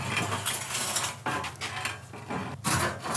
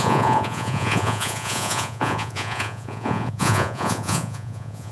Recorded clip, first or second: first